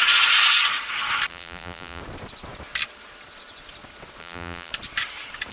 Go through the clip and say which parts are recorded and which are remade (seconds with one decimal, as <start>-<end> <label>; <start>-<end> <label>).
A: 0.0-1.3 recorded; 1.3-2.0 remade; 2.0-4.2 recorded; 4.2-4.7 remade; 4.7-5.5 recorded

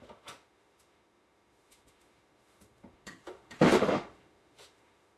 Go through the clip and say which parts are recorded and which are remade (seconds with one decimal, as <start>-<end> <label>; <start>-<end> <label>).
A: 0.0-5.2 remade

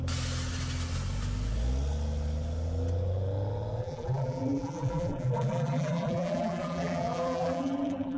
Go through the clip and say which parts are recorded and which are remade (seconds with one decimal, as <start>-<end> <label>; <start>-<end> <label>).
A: 0.0-3.8 recorded; 3.8-8.2 remade

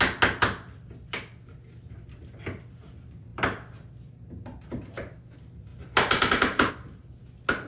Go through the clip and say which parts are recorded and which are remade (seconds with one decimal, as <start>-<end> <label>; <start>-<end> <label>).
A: 0.0-3.3 recorded; 3.3-3.9 remade; 3.9-5.7 recorded; 5.7-6.7 remade; 6.7-7.7 recorded

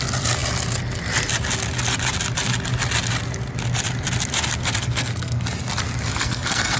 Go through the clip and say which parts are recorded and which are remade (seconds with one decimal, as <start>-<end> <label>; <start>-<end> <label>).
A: 0.0-4.8 recorded; 4.8-5.4 remade; 5.4-6.1 recorded; 6.1-6.8 remade

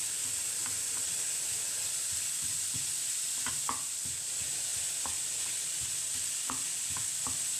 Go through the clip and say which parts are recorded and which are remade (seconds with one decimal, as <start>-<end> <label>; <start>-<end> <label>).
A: 0.0-7.6 recorded